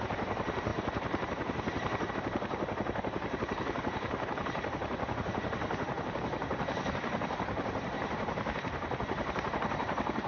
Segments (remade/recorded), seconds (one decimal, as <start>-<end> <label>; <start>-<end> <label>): 0.0-0.7 remade; 0.7-2.1 recorded; 2.1-10.3 remade